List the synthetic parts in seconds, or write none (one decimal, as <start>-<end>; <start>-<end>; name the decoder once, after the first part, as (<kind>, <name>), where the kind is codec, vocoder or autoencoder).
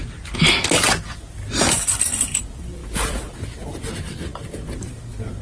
none